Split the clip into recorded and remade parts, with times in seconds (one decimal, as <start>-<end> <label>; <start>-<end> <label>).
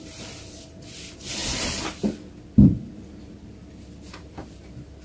0.0-5.0 recorded